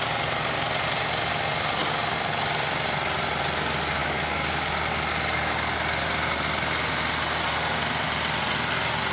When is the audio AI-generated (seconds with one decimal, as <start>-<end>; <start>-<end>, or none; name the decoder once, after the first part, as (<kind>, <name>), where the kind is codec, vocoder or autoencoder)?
4.0-4.7 (codec, DAC)

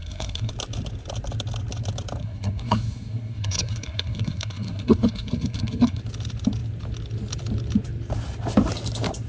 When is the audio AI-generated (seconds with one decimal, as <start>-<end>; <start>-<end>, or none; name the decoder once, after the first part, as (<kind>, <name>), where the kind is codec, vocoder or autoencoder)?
0.0-0.5 (codec, SNAC); 2.2-6.0

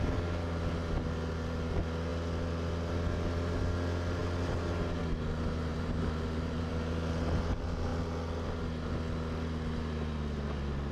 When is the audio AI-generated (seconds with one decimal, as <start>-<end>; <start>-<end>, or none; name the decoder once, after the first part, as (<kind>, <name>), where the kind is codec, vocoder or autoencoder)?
5.7-6.7 (vocoder, BigVGAN v2)

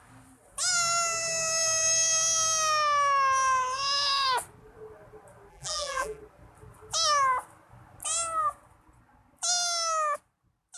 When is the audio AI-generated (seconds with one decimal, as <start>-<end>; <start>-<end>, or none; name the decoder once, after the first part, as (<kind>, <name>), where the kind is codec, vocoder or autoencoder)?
5.5-6.2 (vocoder, BigVGAN v2)

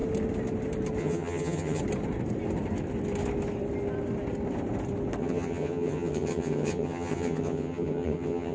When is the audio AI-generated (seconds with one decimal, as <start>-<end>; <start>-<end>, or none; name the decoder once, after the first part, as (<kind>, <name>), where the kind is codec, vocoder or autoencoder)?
1.0-1.8 (vocoder, HiFi-GAN); 5.2-8.5

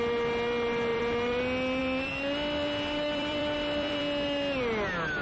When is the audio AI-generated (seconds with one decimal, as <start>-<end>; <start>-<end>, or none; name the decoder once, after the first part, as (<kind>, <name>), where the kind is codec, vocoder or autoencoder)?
0.9-1.4 (vocoder, BigVGAN v2); 1.8-4.0

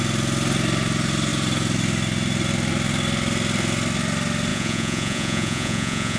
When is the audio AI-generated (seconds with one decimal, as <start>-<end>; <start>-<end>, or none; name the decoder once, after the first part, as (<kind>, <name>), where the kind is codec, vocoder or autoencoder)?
4.5-6.2 (vocoder, Vocos)

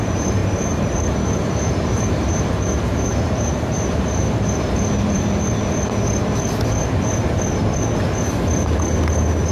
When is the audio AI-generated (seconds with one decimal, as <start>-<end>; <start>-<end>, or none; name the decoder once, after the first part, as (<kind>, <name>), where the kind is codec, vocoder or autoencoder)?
0.4-5.3 (vocoder, BigVGAN v2)